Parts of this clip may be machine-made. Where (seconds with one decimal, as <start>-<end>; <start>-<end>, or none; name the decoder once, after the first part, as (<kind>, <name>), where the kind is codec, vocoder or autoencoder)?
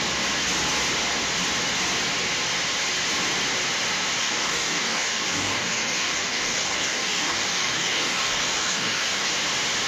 4.2-9.3 (codec, DAC)